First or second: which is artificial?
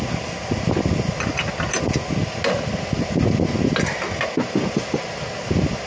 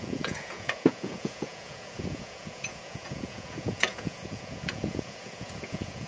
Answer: second